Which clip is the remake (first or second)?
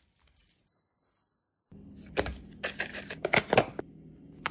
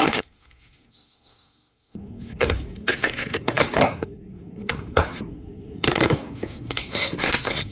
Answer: second